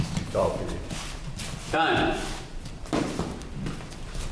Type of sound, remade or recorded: remade